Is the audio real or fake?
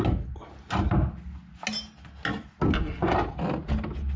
real